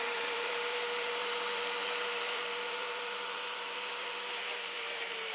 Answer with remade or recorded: remade